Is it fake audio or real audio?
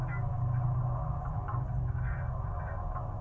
real